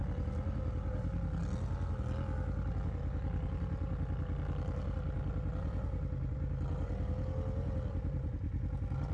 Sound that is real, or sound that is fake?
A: real